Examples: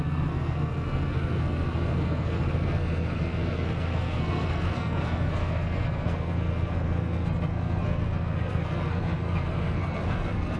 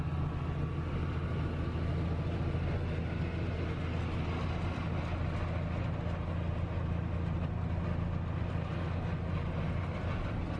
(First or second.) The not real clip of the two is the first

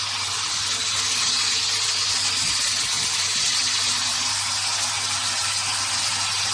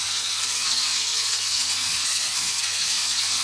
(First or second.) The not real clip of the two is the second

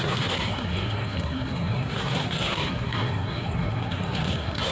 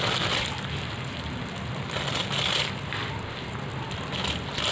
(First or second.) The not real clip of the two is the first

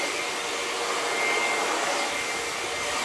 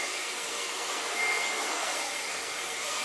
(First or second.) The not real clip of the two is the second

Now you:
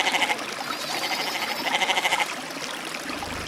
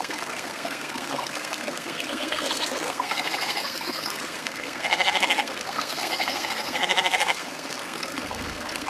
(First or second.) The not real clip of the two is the second